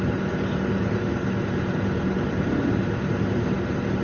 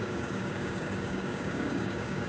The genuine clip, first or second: first